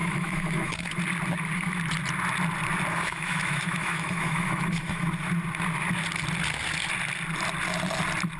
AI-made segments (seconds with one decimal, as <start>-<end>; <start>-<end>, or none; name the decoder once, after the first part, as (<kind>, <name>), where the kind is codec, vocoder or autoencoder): 0.0-1.0 (autoencoder, DAC-VAE); 2.9-5.0